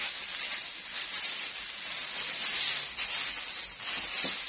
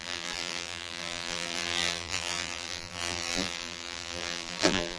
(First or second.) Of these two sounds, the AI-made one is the second